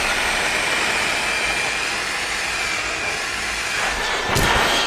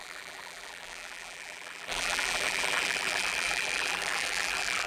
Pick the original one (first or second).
first